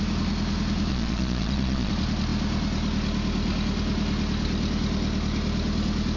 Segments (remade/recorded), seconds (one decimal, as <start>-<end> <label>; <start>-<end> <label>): 0.0-0.9 recorded; 0.9-1.9 remade; 1.9-6.2 recorded